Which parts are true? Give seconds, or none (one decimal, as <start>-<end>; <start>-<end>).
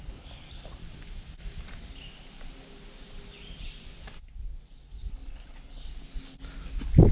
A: 0.8-5.1; 5.8-7.1